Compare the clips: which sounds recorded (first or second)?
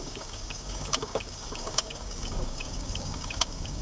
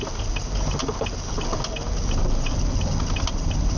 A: second